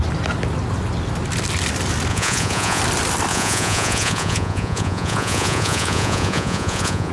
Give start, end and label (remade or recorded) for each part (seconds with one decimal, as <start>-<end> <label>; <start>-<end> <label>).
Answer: 0.0-2.1 recorded; 2.1-2.8 remade; 2.8-3.3 recorded; 3.3-7.1 remade